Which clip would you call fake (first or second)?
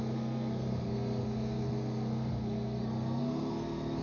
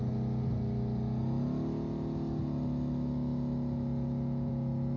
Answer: first